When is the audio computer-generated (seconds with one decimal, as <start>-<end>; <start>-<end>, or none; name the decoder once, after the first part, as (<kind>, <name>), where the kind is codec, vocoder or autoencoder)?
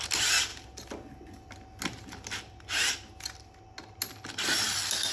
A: none